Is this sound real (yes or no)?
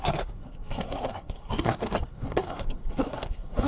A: no